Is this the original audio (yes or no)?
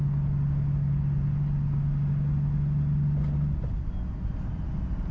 yes